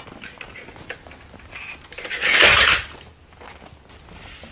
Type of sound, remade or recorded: recorded